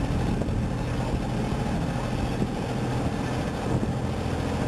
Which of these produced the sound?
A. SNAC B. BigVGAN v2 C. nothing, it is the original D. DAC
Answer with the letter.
C